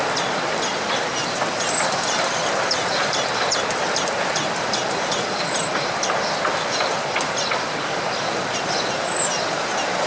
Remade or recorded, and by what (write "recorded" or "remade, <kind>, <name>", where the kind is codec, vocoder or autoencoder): remade, vocoder, BigVGAN v2